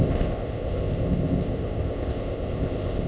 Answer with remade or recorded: remade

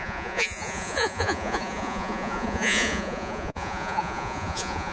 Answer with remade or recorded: remade